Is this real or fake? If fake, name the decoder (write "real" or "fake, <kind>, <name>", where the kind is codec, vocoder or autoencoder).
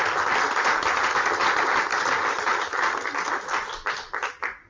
real